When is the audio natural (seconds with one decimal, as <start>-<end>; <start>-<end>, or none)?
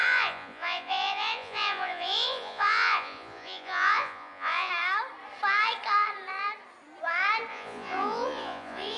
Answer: 4.7-7.5